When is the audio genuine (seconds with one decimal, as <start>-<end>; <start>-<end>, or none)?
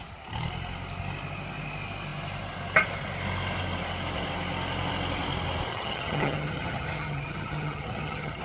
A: 0.0-5.7